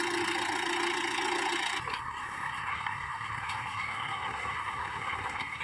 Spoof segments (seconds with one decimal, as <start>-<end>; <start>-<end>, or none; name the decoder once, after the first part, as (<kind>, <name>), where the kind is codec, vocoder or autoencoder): 1.9-5.6 (codec, SNAC)